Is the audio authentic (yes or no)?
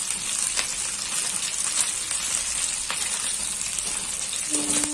yes